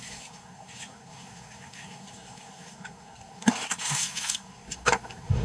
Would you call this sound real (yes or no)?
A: no